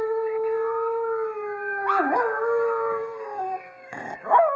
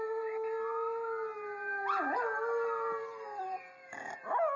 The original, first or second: second